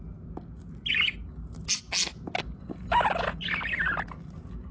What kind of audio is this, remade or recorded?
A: recorded